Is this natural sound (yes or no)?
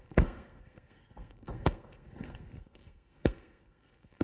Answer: no